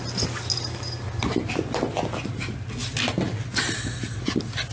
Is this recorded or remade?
recorded